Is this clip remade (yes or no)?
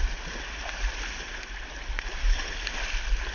no